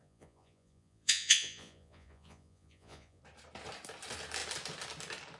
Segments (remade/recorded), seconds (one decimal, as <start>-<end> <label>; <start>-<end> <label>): 0.0-3.2 remade; 3.2-5.4 recorded